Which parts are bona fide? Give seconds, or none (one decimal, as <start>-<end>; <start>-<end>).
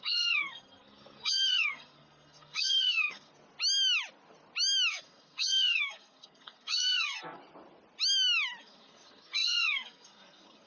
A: 3.3-4.9; 7.4-8.6